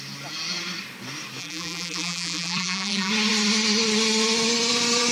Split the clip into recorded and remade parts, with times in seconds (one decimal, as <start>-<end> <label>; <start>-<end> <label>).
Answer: 0.0-1.4 recorded; 1.4-3.1 remade; 3.1-5.1 recorded